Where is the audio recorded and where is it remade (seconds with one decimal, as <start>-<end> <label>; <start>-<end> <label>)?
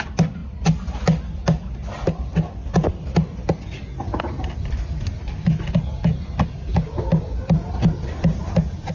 0.0-8.9 recorded